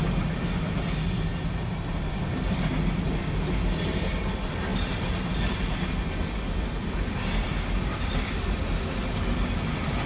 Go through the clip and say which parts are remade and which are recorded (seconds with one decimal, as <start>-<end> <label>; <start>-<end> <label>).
0.0-10.1 recorded